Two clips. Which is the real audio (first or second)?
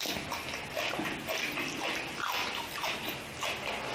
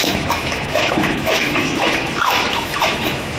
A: first